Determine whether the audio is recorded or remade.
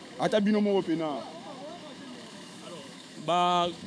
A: remade